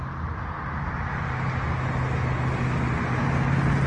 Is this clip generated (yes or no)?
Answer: no